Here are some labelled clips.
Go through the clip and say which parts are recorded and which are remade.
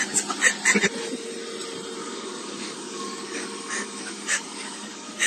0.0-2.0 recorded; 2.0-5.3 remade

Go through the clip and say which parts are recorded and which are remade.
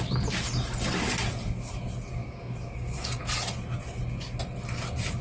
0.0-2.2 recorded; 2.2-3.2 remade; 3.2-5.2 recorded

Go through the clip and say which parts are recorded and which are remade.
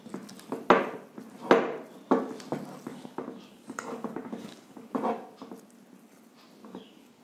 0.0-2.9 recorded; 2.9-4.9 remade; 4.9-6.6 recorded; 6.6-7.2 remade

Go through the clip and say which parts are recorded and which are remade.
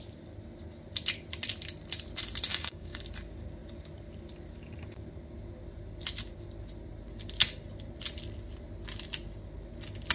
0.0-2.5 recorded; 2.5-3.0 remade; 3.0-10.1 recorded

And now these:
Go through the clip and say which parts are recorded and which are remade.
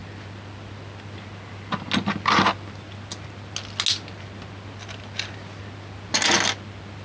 0.0-7.0 recorded